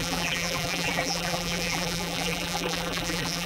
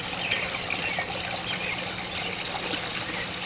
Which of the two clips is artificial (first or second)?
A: first